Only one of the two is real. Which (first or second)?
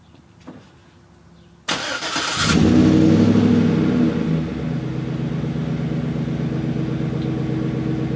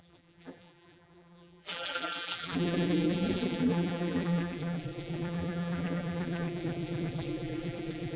first